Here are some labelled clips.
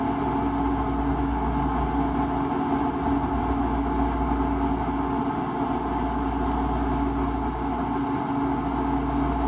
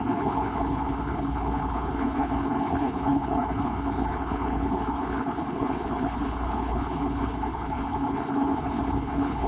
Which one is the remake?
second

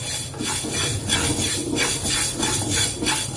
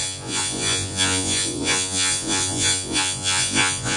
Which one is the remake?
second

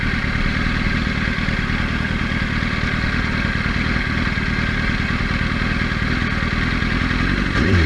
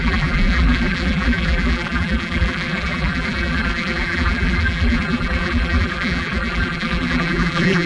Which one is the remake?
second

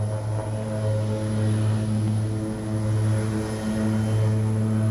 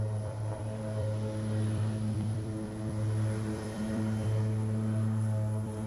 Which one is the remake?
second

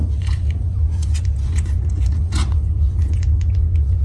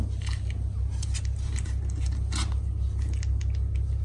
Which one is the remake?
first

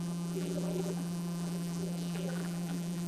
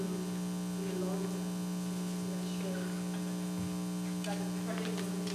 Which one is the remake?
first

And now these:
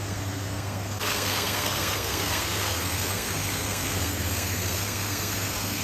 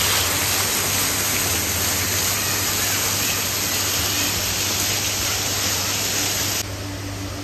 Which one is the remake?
first